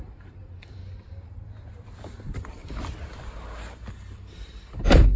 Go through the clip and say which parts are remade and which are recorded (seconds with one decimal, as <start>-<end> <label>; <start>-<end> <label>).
0.0-0.8 remade; 0.8-3.9 recorded; 3.9-5.2 remade

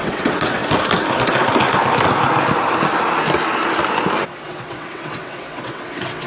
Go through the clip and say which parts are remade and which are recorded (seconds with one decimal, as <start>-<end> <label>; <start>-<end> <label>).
0.0-0.6 remade; 0.6-4.4 recorded; 4.4-6.3 remade

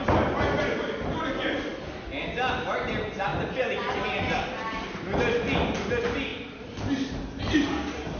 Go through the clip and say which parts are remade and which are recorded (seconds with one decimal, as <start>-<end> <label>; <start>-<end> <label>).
0.0-8.2 recorded

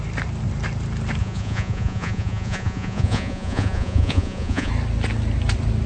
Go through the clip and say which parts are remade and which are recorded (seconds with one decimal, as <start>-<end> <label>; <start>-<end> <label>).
0.0-1.2 recorded; 1.2-4.7 remade; 4.7-5.9 recorded

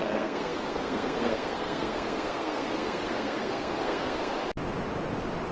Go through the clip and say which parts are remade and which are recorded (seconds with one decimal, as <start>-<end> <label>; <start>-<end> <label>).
0.0-4.3 remade; 4.3-5.5 recorded

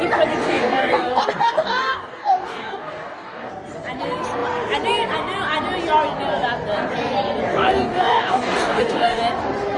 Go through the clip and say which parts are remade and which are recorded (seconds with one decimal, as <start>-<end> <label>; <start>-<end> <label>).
0.0-0.4 recorded; 0.4-3.5 remade; 3.5-7.5 recorded; 7.5-9.2 remade; 9.2-9.8 recorded